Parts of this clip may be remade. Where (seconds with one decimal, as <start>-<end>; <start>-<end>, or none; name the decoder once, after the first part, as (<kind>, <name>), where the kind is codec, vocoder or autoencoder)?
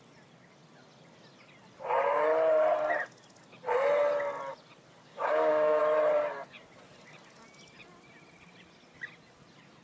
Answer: 5.0-5.8 (codec, DAC)